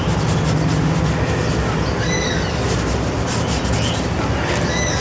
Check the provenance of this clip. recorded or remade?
recorded